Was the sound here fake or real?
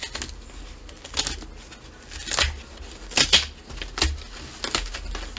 real